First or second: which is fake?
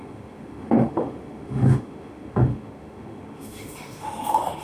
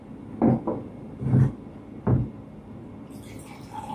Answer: first